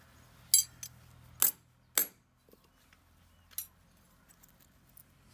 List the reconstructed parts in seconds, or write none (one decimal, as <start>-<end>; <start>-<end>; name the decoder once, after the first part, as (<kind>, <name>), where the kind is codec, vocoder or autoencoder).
none